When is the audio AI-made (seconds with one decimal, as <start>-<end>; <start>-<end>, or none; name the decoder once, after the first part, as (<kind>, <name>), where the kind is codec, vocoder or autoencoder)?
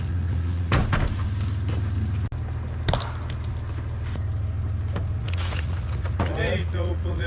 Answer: 0.0-0.8 (vocoder, Vocos); 5.2-7.3